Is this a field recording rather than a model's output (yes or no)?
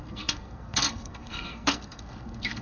no